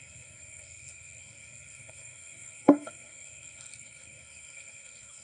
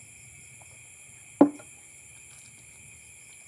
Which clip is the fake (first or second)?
first